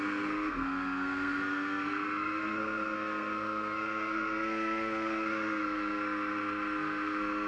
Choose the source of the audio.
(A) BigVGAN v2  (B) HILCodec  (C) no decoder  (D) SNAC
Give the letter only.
D